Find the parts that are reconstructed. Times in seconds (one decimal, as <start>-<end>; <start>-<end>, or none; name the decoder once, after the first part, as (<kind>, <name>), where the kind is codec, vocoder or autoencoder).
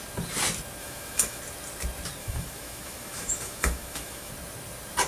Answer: 0.8-1.4 (autoencoder, DAC-VAE); 2.2-4.3